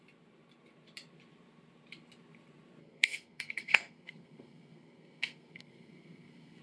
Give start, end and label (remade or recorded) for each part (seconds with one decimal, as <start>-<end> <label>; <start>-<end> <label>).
0.0-2.8 recorded; 2.8-6.6 remade